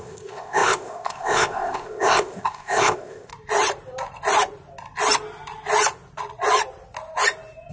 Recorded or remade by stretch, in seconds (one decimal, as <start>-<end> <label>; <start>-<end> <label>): 0.0-3.3 remade; 3.3-7.7 recorded